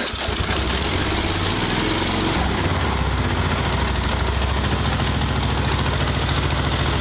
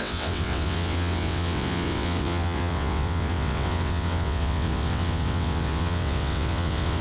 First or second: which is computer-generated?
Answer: second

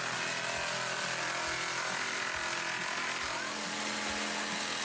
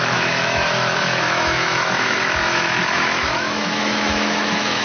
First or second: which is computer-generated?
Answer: second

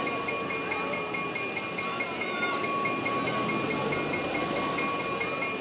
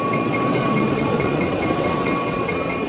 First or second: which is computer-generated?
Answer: second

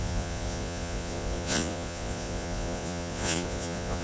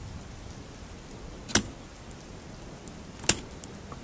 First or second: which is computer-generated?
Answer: first